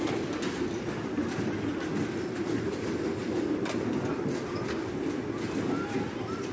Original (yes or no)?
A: yes